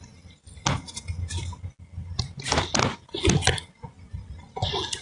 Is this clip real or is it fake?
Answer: real